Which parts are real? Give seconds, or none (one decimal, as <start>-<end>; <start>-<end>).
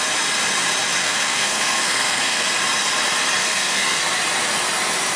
0.0-1.0; 2.5-3.4; 4.0-5.2